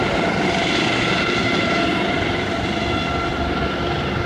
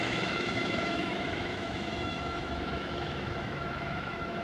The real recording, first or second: first